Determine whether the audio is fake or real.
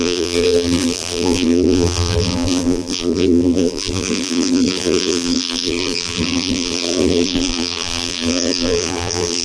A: fake